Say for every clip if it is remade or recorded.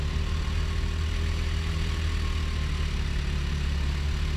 recorded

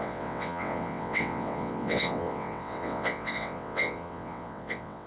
remade